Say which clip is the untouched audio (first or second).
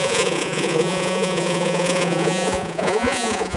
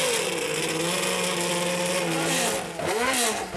second